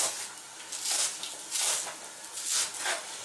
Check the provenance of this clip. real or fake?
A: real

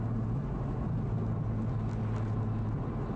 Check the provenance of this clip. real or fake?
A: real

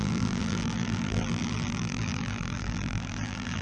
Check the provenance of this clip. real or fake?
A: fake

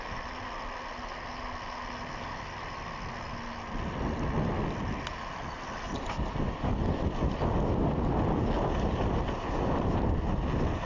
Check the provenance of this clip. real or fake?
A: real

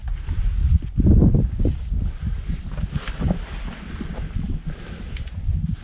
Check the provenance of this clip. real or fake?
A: real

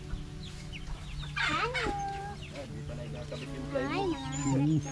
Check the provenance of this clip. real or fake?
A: real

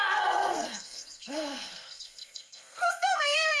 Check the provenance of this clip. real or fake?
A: fake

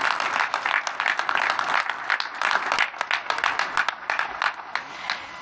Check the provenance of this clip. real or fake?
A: real